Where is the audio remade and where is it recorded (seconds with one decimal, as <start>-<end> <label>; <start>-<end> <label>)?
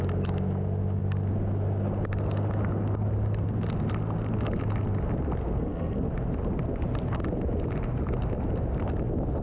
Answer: 0.0-5.4 recorded; 5.4-6.1 remade; 6.1-9.4 recorded